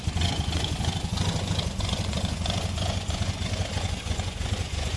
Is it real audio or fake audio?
fake